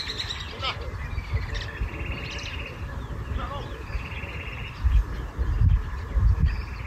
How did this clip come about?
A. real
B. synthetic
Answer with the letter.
A